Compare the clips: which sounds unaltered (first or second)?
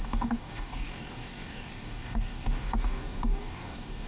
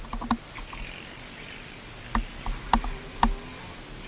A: second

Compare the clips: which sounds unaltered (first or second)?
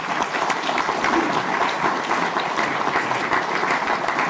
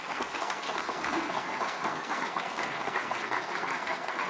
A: first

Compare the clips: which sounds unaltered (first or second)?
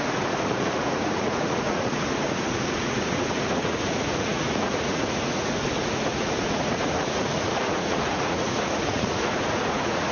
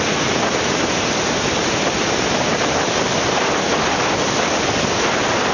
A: second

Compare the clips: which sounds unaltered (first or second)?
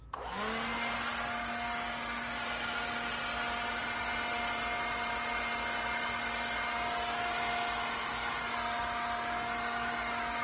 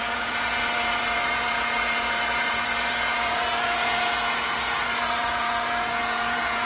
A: first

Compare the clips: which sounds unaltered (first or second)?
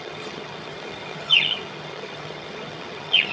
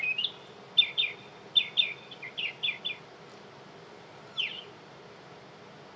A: second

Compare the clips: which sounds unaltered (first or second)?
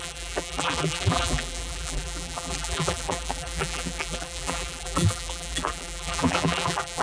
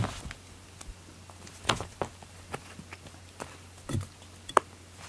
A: second